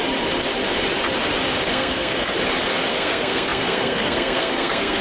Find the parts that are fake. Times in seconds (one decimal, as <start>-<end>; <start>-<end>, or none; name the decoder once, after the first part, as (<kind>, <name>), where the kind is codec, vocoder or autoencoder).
1.7-2.3 (codec, SNAC); 2.9-5.0